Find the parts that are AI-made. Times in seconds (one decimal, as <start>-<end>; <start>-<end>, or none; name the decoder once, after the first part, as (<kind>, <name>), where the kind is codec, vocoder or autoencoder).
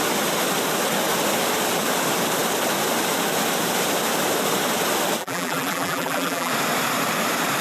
5.2-6.5 (vocoder, BigVGAN v2)